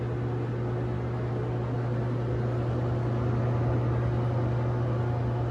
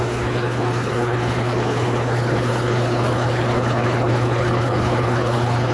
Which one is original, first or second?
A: first